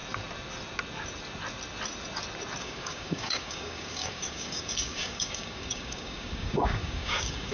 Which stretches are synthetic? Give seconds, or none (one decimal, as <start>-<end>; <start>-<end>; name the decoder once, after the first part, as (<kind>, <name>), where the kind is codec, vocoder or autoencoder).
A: 2.6-7.5 (codec, DAC)